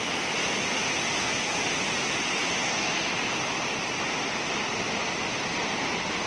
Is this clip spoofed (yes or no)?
no